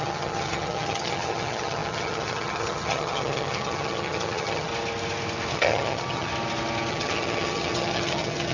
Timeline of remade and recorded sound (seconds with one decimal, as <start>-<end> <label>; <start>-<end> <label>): 0.0-4.7 remade; 4.7-5.5 recorded; 5.5-6.3 remade; 6.3-6.9 recorded; 6.9-8.5 remade